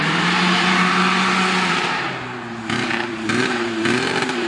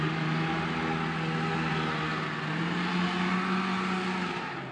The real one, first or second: second